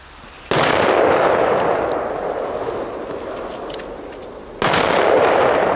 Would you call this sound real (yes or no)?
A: yes